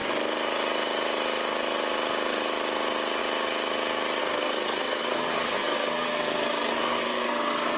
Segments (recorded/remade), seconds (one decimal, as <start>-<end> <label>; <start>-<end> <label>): 0.0-4.2 recorded; 4.2-7.8 remade